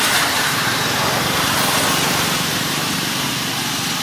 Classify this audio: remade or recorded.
remade